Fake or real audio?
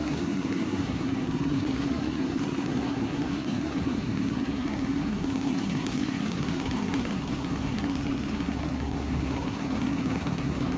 fake